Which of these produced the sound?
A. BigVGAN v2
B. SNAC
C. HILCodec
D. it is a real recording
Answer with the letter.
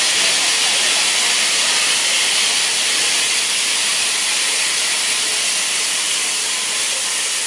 D